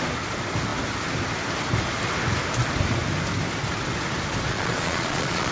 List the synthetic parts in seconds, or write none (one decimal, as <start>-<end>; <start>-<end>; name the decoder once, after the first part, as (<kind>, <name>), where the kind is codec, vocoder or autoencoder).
4.5-5.5 (vocoder, Vocos)